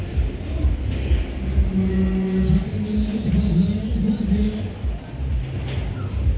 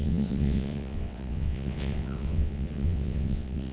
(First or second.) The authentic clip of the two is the first